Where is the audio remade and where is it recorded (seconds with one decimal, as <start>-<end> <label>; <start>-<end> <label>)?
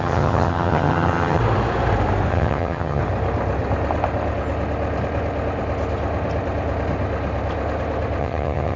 0.0-1.4 remade; 1.4-2.3 recorded; 2.3-3.0 remade; 3.0-8.2 recorded; 8.2-8.8 remade